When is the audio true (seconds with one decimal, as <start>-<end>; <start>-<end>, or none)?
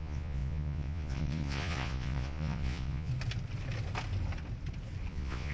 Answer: 3.1-5.1